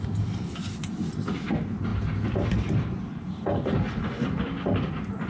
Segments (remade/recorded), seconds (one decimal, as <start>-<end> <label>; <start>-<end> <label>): 0.0-5.3 recorded